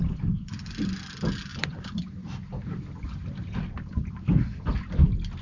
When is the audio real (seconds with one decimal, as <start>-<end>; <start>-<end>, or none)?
0.5-1.5; 4.7-5.4